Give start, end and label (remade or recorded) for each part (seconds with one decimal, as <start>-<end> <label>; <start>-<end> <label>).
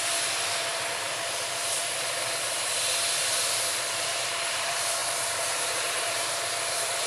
0.0-7.1 remade